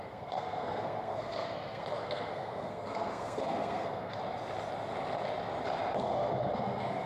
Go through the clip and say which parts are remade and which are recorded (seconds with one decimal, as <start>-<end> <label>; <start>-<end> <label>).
0.0-4.2 remade; 4.2-6.0 recorded; 6.0-7.1 remade